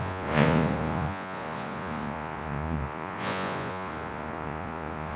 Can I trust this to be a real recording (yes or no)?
no